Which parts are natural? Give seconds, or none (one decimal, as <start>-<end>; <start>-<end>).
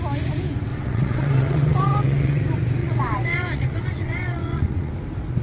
0.0-0.7; 2.4-2.8; 4.9-5.4